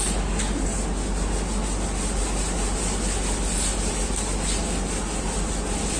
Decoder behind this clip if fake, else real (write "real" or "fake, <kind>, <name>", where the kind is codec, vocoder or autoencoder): real